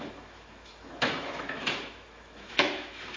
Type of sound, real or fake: fake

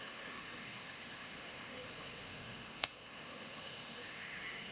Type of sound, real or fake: fake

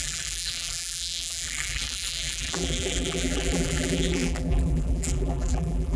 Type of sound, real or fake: fake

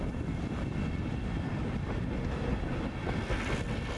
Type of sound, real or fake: real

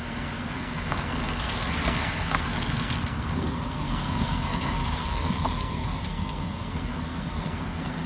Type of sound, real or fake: fake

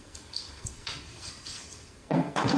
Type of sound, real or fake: fake